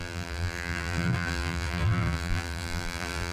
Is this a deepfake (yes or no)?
yes